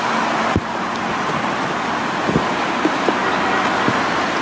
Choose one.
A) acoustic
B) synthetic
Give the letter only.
A